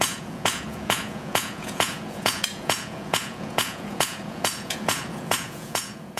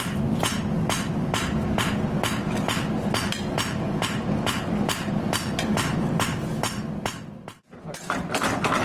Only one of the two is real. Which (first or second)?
second